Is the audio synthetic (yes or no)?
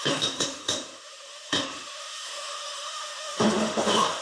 yes